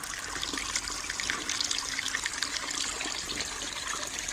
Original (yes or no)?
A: yes